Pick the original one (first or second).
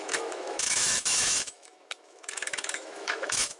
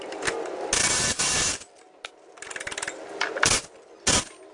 second